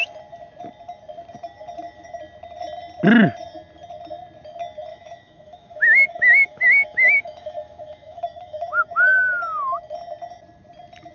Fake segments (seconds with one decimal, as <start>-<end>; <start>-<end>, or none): 4.9-8.7